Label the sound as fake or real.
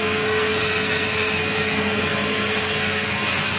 fake